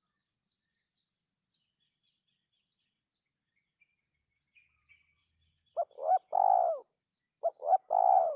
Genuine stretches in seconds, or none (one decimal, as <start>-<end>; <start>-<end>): 0.0-8.4